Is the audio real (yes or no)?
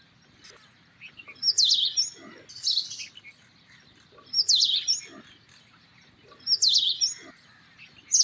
yes